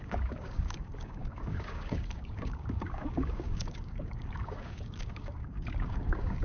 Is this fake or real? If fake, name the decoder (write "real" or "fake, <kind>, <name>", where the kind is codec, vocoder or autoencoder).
fake, codec, DAC